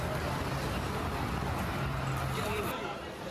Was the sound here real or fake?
real